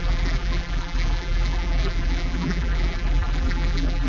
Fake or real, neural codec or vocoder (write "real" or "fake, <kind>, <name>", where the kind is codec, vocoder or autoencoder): fake, vocoder, BigVGAN v2